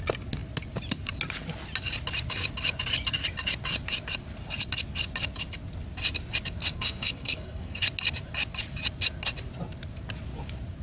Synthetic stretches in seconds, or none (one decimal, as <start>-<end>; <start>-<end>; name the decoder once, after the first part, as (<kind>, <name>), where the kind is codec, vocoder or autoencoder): 6.7-7.8 (codec, SNAC)